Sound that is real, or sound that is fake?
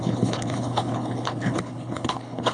fake